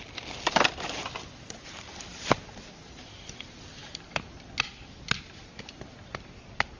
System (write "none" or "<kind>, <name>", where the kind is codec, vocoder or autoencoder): none